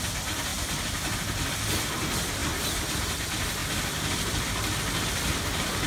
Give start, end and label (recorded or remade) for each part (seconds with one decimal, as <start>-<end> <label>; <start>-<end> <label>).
0.0-5.9 recorded